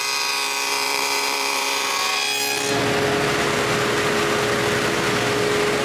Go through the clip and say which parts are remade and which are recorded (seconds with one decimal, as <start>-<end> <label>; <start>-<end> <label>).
0.0-1.9 remade; 1.9-5.8 recorded